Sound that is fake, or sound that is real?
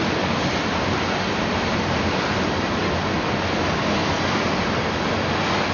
real